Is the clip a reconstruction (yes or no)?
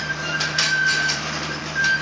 yes